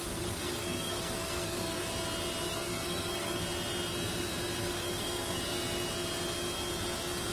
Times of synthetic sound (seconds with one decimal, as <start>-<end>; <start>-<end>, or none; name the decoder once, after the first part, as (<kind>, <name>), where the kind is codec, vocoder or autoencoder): 0.0-1.8 (codec, SNAC); 2.5-3.4; 4.6-5.4